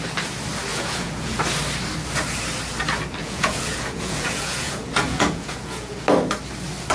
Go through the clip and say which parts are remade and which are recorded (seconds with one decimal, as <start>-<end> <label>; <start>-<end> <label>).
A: 0.0-0.7 recorded; 0.7-1.4 remade; 1.4-3.2 recorded; 3.2-6.0 remade; 6.0-6.9 recorded